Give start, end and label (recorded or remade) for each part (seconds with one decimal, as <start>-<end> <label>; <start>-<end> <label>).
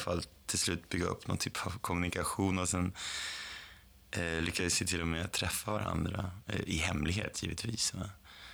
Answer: 0.0-8.5 recorded